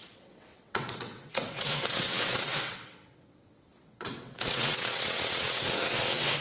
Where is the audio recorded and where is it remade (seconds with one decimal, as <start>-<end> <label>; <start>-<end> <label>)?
0.0-6.4 remade